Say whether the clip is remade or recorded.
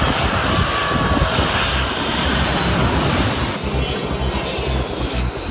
recorded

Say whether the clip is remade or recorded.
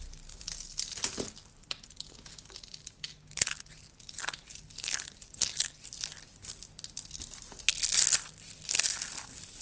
recorded